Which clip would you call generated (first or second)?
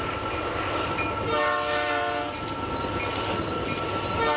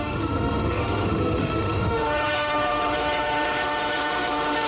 second